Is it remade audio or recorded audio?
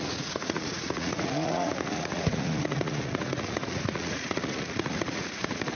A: remade